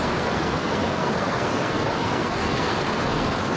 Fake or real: fake